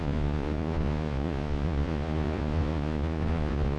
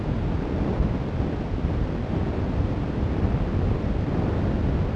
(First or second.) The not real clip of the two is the first